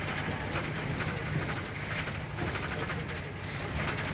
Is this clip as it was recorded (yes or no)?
yes